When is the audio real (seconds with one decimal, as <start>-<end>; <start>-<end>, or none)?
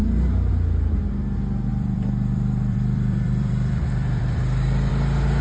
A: 0.0-1.7; 4.9-5.4